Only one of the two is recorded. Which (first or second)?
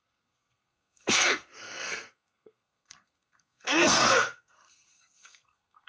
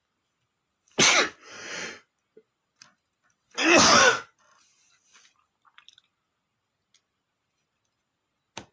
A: second